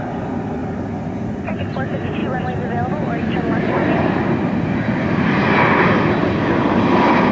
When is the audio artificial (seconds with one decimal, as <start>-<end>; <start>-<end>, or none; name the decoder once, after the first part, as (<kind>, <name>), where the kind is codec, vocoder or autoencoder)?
none